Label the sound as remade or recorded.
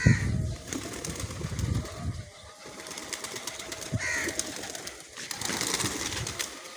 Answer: recorded